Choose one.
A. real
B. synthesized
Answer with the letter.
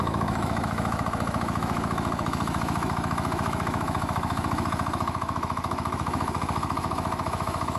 B